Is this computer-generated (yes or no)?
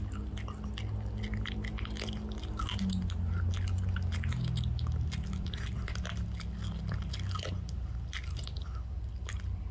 no